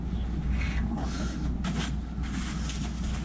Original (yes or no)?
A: yes